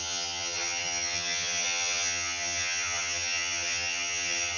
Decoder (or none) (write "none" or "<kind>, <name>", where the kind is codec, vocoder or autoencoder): vocoder, HiFi-GAN